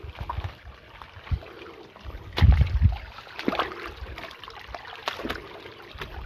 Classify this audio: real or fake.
real